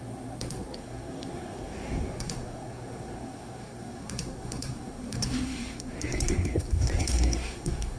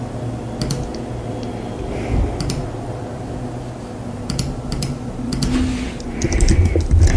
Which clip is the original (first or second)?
second